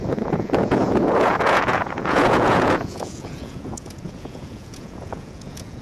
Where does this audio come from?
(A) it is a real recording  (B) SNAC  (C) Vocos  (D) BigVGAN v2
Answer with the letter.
C